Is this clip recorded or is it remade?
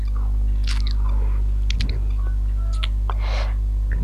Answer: recorded